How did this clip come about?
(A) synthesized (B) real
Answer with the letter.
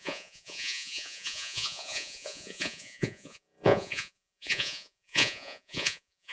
A